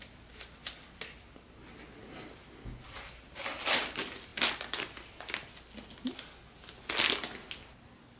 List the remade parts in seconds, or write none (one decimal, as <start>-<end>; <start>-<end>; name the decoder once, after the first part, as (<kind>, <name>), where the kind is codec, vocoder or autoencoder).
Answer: none